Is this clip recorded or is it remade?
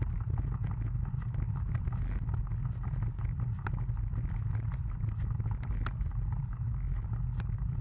recorded